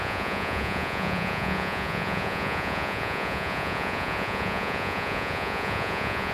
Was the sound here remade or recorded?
remade